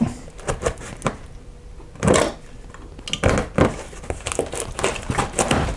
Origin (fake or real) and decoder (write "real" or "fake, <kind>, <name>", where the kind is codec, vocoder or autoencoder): real